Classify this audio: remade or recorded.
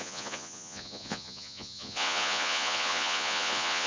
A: remade